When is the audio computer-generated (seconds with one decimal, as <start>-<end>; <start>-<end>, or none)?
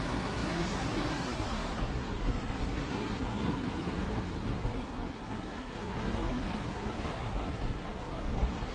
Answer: 0.0-8.7